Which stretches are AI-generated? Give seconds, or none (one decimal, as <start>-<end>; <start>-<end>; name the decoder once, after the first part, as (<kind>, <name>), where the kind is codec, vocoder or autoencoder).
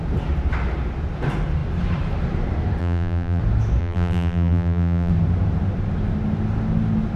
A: 2.8-3.4 (vocoder, BigVGAN v2); 3.8-5.1